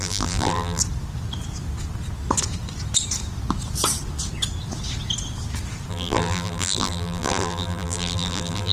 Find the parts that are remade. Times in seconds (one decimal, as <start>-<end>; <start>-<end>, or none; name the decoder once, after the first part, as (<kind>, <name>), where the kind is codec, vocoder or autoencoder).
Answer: 0.0-0.8 (vocoder, BigVGAN v2); 5.9-8.7